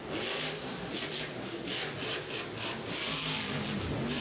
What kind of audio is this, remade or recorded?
recorded